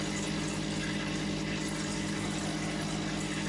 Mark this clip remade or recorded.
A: recorded